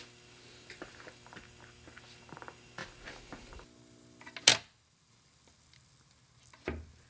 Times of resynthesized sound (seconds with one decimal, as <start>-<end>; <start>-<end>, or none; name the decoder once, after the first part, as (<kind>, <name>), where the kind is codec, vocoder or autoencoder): none